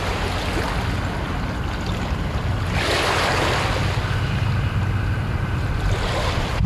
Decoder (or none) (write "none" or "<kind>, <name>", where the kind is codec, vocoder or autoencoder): none